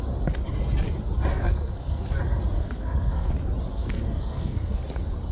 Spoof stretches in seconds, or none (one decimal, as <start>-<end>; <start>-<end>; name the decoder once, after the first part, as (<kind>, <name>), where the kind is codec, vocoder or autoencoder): 1.3-2.2 (codec, SNAC); 2.6-3.3; 3.7-4.8